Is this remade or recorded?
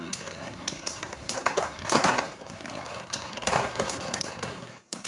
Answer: remade